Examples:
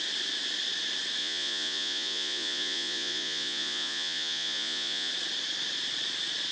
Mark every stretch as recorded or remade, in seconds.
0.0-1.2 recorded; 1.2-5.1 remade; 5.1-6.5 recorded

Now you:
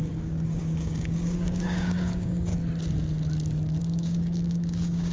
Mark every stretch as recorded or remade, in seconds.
0.0-2.5 remade; 2.5-3.8 recorded; 3.8-5.1 remade

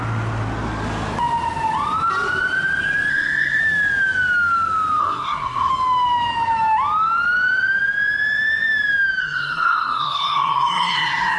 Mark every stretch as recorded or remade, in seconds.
0.0-3.1 recorded; 3.1-3.6 remade; 3.6-5.0 recorded; 5.0-5.7 remade; 5.7-9.2 recorded; 9.2-11.4 remade

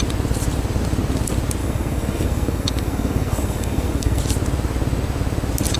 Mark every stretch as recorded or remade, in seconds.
0.0-1.6 recorded; 1.6-4.2 remade; 4.2-5.8 recorded

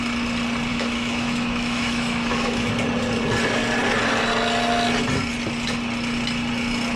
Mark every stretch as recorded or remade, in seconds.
0.0-0.7 recorded; 0.7-2.7 remade; 2.7-7.0 recorded

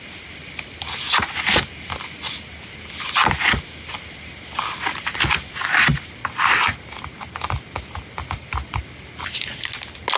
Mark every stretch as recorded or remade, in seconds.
0.0-10.2 recorded

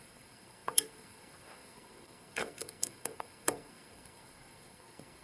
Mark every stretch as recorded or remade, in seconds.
0.0-5.2 remade